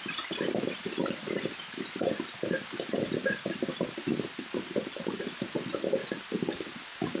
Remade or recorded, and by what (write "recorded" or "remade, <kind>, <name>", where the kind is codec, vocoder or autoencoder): recorded